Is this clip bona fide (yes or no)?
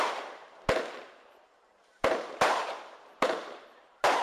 no